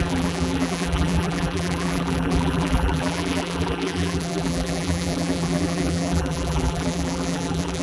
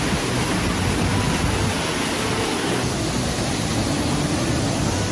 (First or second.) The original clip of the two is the second